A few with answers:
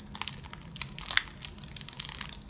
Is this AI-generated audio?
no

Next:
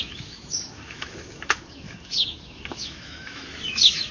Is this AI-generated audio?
yes